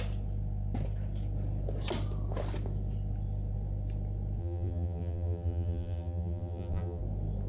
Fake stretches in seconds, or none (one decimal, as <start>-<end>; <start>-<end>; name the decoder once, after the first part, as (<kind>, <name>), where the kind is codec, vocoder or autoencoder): 4.4-7.0 (vocoder, BigVGAN v2)